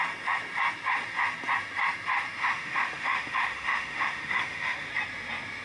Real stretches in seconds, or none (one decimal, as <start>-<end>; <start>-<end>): 0.0-2.4; 4.9-5.6